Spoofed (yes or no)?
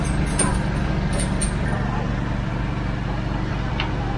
no